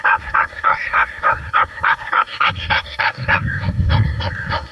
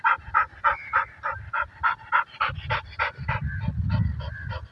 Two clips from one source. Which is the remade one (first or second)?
first